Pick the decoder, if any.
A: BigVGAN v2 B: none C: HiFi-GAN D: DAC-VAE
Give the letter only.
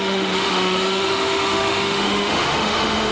D